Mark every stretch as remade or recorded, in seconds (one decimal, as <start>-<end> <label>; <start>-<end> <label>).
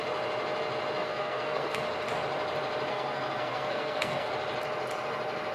0.0-1.0 recorded; 1.0-1.8 remade; 1.8-2.9 recorded; 2.9-4.3 remade; 4.3-5.5 recorded